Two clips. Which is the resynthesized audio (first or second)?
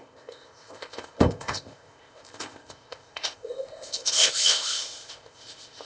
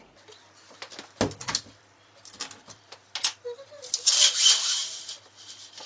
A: first